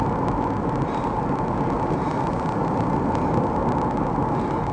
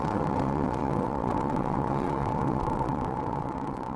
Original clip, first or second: first